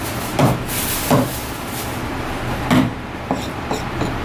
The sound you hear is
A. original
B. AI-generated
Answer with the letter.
B